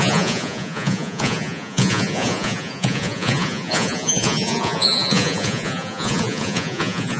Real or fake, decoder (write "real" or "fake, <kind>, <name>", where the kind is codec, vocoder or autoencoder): fake, vocoder, Vocos